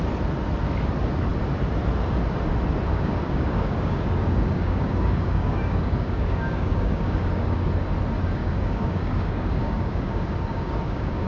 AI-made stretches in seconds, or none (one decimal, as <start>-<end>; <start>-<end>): 2.9-7.7; 8.4-11.3